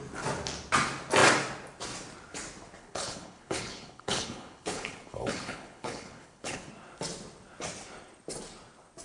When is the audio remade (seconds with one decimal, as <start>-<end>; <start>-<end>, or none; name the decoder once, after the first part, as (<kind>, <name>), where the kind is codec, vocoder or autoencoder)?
2.8-6.7 (codec, HILCodec)